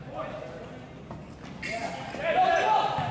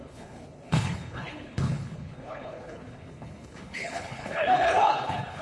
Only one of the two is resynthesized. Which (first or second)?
second